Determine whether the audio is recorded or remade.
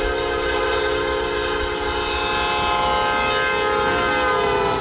recorded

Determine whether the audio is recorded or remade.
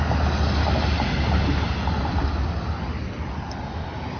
recorded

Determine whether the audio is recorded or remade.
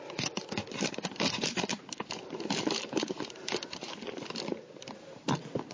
recorded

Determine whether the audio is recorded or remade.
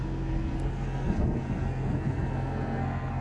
remade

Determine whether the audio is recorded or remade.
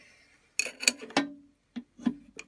recorded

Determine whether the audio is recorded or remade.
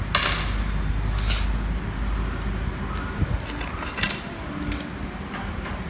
recorded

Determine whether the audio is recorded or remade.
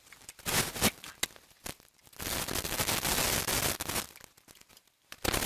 recorded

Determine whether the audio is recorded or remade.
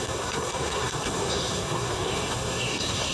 remade